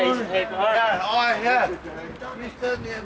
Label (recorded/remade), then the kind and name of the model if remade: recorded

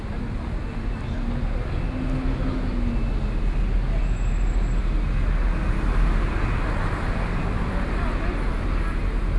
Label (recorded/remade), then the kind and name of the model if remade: recorded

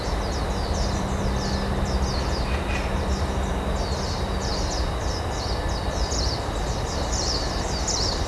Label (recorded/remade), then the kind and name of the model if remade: recorded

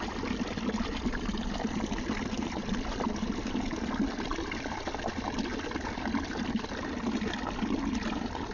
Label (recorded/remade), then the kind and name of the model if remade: recorded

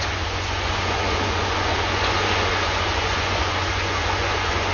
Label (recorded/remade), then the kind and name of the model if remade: remade, vocoder, Vocos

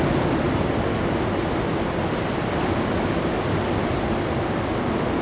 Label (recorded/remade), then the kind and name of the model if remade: recorded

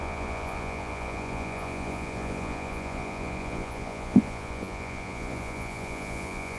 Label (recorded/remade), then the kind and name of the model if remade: remade, vocoder, Vocos